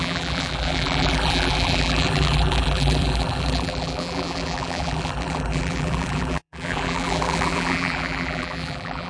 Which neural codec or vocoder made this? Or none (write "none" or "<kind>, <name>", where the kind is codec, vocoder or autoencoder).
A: vocoder, BigVGAN v2